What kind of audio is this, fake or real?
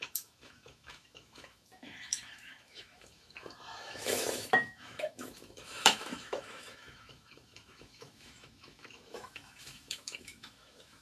fake